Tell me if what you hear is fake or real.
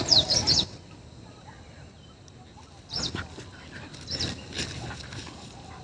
real